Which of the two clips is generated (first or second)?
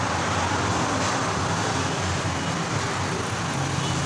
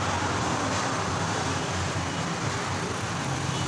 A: second